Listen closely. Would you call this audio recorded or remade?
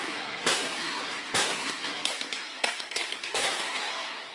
remade